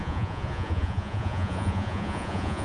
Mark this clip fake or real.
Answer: fake